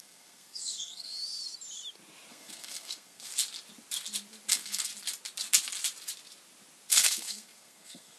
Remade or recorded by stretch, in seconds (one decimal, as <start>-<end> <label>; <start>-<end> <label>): 0.0-1.2 remade; 1.2-2.3 recorded; 2.3-3.3 remade; 3.3-4.5 recorded; 4.5-4.9 remade; 4.9-6.9 recorded; 6.9-8.2 remade